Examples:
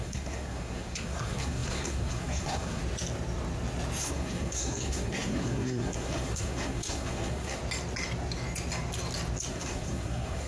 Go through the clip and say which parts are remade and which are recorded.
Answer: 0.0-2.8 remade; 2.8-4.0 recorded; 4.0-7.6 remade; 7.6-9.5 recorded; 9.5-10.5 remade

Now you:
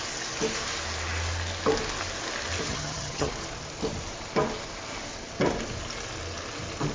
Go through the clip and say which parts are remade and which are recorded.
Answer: 0.0-2.7 recorded; 2.7-3.3 remade; 3.3-6.9 recorded

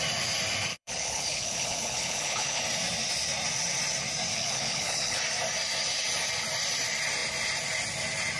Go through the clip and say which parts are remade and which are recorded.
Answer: 0.0-0.7 recorded; 0.7-2.6 remade; 2.6-4.3 recorded; 4.3-5.2 remade; 5.2-8.4 recorded

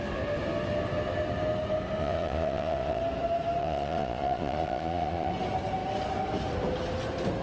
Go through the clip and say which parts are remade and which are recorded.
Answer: 0.0-2.0 recorded; 2.0-3.0 remade; 3.0-3.6 recorded; 3.6-5.3 remade; 5.3-7.4 recorded